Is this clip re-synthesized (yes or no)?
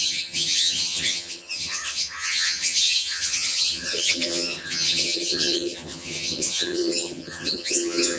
yes